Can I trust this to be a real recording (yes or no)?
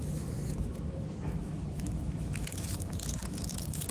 no